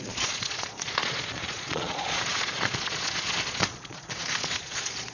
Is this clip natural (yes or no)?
no